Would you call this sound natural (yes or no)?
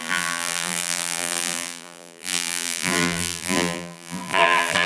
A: no